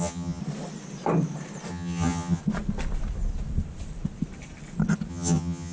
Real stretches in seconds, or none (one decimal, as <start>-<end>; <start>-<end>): 0.4-1.7; 2.4-5.1